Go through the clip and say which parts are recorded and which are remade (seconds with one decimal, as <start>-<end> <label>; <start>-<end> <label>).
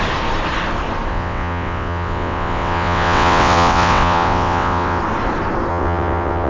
0.0-1.1 recorded; 1.1-5.0 remade; 5.0-5.7 recorded; 5.7-6.5 remade